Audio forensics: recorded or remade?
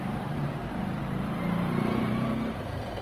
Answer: remade